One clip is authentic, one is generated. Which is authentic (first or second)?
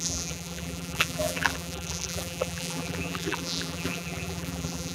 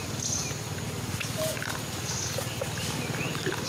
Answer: second